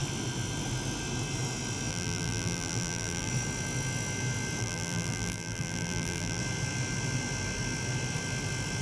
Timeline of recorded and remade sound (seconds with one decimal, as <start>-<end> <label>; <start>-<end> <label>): 0.0-1.9 recorded; 1.9-3.3 remade; 3.3-4.6 recorded; 4.6-6.4 remade; 6.4-8.8 recorded